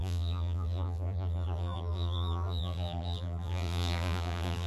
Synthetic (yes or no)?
yes